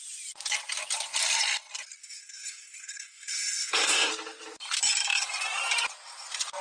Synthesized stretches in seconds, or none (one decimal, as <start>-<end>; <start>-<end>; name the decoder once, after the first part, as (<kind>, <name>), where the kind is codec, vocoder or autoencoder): 2.0-4.1 (codec, SNAC)